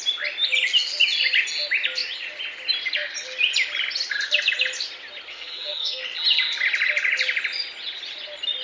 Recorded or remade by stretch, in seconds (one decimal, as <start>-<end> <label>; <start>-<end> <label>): 0.0-5.3 recorded; 5.3-6.0 remade; 6.0-8.6 recorded